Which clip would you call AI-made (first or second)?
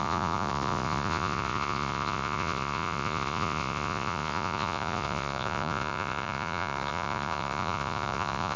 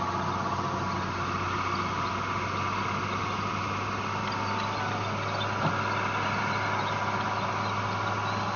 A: first